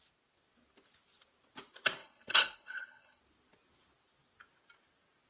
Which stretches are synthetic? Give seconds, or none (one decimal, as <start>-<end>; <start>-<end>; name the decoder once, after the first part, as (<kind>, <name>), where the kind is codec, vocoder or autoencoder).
2.0-3.2 (codec, HILCodec)